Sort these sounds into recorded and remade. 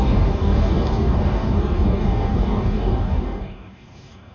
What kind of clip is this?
remade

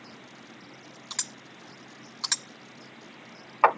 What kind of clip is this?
recorded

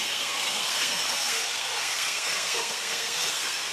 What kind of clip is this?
remade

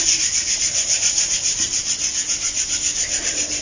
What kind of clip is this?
recorded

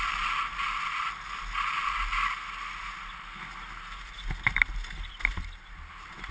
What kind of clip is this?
recorded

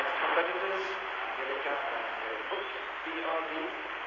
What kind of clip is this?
recorded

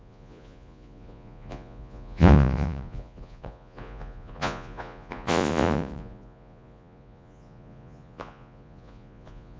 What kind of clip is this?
remade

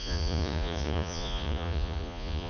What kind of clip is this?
remade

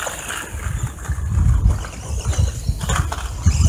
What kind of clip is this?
remade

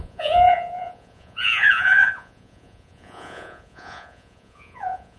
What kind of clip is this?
remade